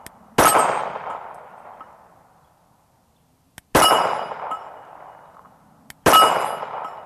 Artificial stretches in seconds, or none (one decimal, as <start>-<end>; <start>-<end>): none